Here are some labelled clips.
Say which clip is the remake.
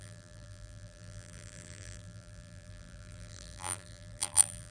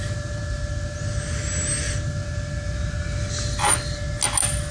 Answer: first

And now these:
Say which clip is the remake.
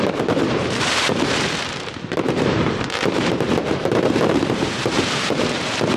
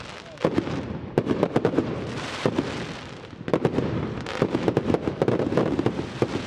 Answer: first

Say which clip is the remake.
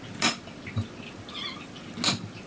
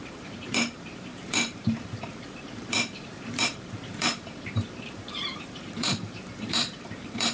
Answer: second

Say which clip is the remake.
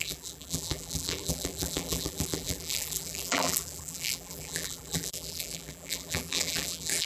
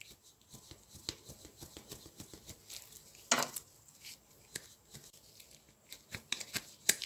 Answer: first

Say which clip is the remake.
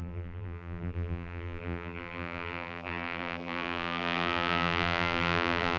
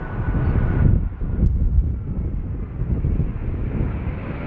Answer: first